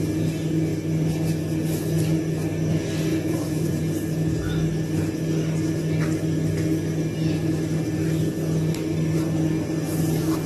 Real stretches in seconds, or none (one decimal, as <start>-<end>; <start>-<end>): 0.0-3.1; 3.8-10.5